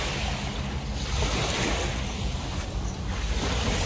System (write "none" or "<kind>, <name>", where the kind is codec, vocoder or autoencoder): none